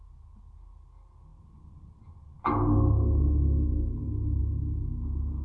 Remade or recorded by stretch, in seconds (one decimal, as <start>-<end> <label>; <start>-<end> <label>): 0.0-5.4 recorded